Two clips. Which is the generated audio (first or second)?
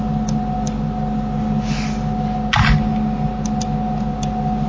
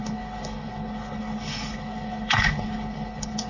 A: second